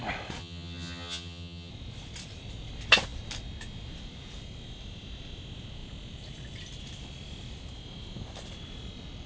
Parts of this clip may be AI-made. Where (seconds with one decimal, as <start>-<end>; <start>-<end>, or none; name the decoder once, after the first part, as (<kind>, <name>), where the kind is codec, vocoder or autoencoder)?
0.4-1.7 (vocoder, HiFi-GAN)